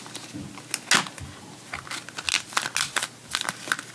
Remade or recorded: recorded